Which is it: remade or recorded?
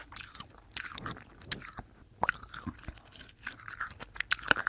recorded